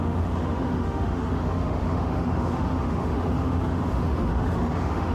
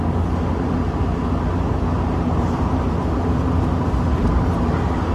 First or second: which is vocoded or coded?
first